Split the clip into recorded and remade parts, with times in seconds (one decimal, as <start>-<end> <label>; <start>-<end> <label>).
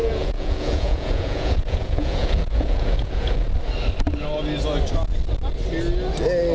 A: 0.0-3.5 remade; 3.5-6.5 recorded